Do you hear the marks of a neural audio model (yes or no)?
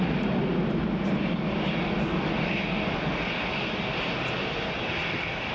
no